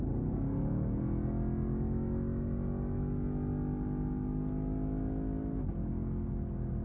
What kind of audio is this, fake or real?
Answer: real